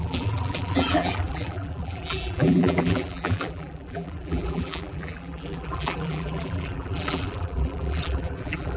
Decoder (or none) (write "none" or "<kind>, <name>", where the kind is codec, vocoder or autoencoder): vocoder, BigVGAN v2